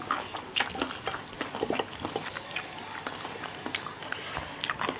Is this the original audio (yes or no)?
yes